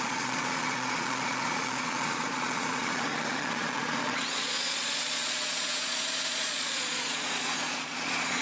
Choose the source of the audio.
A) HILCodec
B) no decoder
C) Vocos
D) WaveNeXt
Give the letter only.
C